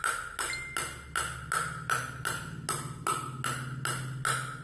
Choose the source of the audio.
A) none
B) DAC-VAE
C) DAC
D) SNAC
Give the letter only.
A